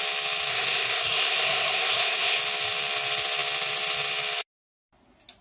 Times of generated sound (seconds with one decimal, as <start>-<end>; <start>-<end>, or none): 0.5-2.4